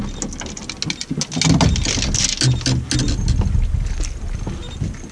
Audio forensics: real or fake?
real